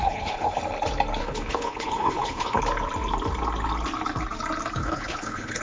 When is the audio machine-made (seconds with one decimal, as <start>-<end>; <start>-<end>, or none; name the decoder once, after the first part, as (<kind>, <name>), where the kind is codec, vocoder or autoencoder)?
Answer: 0.0-0.6 (codec, HILCodec); 1.2-2.6; 4.8-5.6